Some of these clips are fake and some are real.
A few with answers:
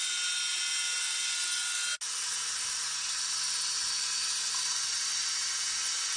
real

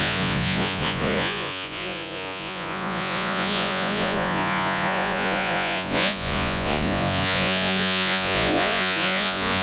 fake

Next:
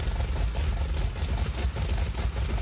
real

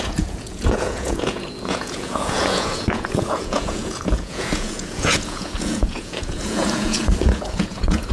fake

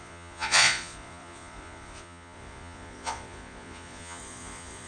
fake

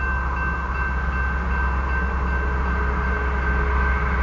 real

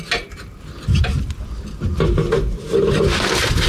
real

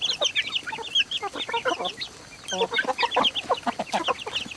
real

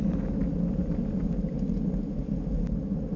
real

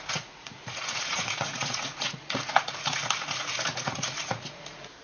fake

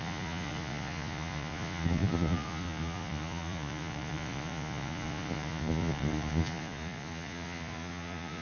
fake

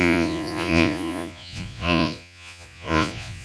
fake